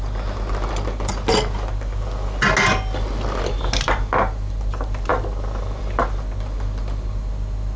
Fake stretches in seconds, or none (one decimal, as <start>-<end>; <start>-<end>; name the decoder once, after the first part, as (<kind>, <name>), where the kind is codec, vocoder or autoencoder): none